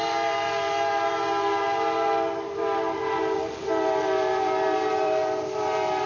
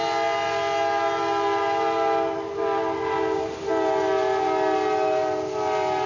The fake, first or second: first